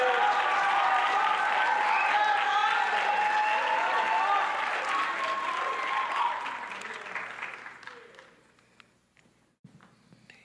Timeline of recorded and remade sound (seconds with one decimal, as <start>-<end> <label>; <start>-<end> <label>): 0.0-10.4 recorded